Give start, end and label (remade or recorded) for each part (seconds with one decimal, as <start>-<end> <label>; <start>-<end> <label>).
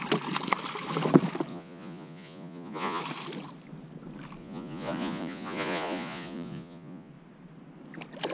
0.0-1.5 recorded; 1.5-3.0 remade; 3.0-4.4 recorded; 4.4-7.1 remade; 7.1-8.3 recorded